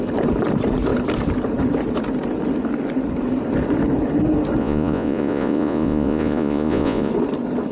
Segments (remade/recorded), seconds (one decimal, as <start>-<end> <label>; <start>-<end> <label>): 0.0-4.6 recorded; 4.6-7.1 remade; 7.1-7.7 recorded